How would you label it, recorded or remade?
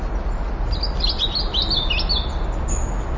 recorded